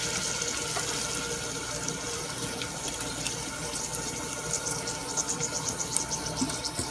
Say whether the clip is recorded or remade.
recorded